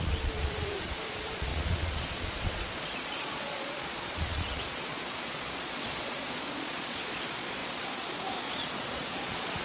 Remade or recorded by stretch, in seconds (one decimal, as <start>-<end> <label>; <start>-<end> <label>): 0.0-9.6 remade